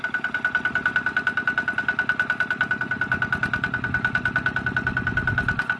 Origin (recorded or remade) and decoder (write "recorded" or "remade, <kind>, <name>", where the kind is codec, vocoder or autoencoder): recorded